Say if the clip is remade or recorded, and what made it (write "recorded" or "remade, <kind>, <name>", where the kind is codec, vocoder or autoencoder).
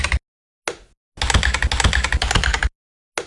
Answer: recorded